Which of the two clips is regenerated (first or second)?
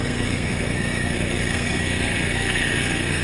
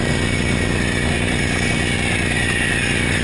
first